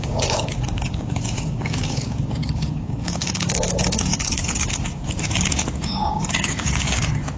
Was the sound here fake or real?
fake